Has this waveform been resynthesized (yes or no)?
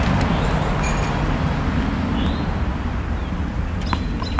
no